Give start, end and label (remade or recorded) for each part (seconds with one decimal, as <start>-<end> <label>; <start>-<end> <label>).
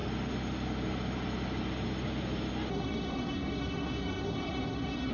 0.0-2.7 recorded; 2.7-5.1 remade